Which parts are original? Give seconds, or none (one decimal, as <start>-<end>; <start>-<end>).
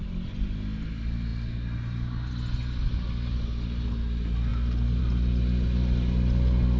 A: 0.0-6.8